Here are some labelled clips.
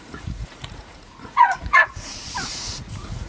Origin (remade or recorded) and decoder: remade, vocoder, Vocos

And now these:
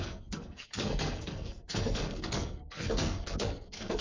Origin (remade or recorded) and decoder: remade, codec, SNAC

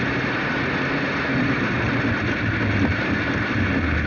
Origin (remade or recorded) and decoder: recorded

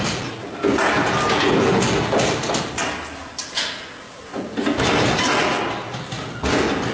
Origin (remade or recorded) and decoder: recorded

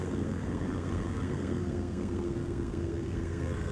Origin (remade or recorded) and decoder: remade, codec, SNAC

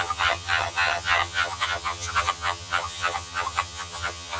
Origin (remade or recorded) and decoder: remade, vocoder, HiFi-GAN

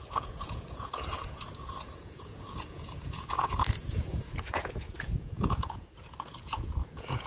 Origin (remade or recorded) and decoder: remade, vocoder, Vocos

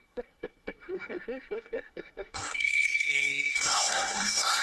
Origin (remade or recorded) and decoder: remade, codec, SNAC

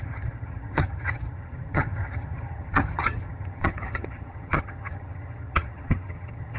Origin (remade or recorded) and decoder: remade, vocoder, HiFi-GAN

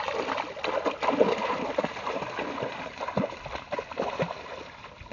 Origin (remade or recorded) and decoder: recorded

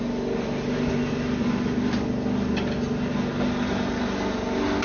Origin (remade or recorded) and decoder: recorded